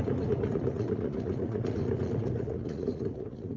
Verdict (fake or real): fake